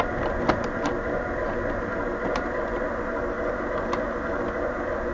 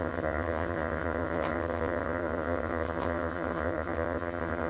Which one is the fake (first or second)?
second